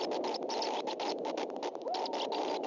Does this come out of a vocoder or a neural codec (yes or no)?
no